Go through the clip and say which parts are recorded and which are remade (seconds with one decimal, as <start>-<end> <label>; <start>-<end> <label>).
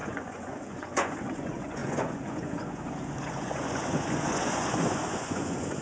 0.0-5.8 remade